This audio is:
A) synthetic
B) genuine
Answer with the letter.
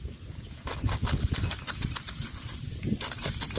B